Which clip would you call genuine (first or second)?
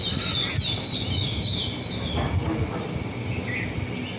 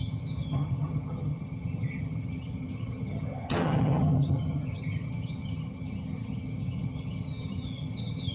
first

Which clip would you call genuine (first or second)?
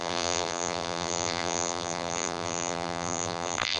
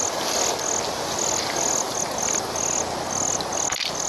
second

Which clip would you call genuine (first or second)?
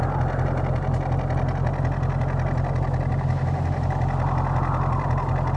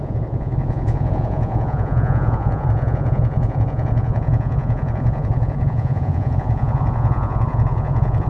first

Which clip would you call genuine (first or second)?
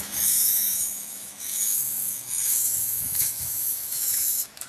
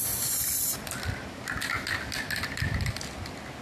second